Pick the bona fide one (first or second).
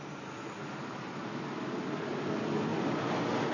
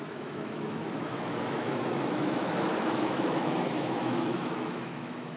first